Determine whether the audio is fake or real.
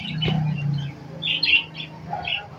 real